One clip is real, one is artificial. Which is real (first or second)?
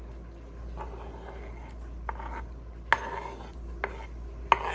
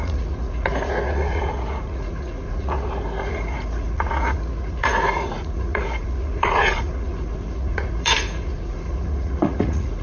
first